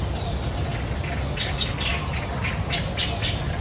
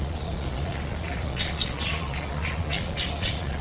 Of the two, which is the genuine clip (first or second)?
first